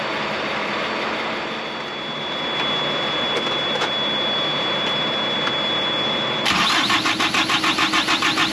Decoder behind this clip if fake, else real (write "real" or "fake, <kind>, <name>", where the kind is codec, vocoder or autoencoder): real